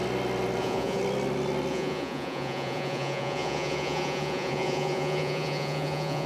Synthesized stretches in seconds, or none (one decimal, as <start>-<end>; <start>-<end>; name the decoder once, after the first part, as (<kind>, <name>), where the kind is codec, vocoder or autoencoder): 0.6-1.0 (vocoder, Vocos); 1.7-6.3